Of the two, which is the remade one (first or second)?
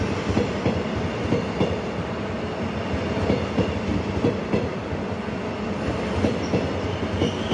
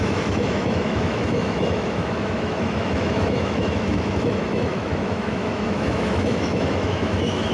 second